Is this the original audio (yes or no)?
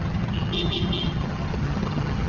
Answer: no